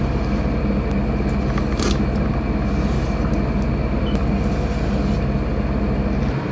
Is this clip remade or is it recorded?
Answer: recorded